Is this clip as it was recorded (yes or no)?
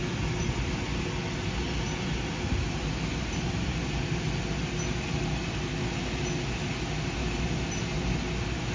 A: yes